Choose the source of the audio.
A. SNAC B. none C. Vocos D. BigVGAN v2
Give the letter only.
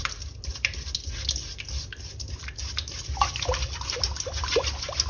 B